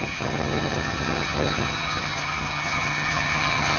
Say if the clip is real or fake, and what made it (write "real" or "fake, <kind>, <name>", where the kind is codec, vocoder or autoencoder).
fake, vocoder, HiFi-GAN